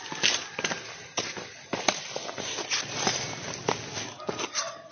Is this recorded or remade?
recorded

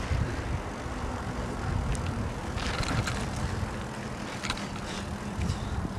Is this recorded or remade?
recorded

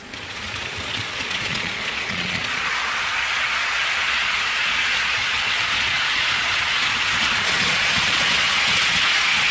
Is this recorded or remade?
remade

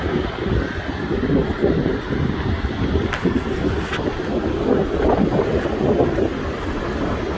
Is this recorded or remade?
recorded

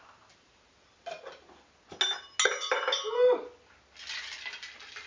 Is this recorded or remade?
recorded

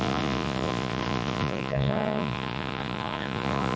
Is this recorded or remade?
remade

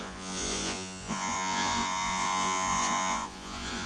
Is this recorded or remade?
remade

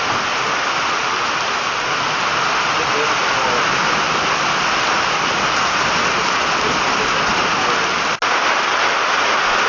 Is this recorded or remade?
recorded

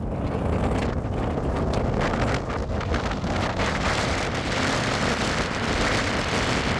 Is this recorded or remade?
recorded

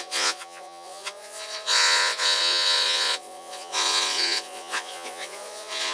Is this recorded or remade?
remade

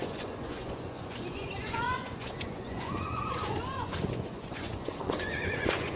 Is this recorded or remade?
remade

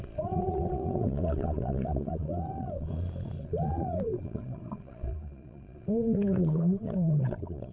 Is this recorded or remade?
remade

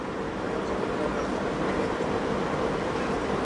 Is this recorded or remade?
recorded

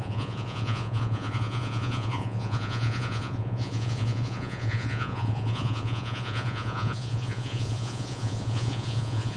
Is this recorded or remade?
remade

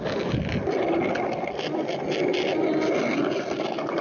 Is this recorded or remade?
recorded